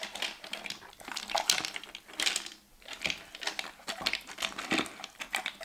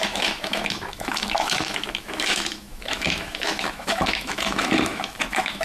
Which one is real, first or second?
first